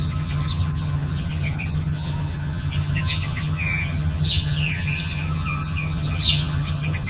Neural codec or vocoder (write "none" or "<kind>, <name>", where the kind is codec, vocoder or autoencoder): vocoder, HiFi-GAN